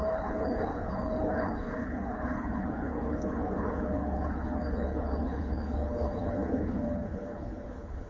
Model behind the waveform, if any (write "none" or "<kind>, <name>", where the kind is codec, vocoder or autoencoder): codec, HILCodec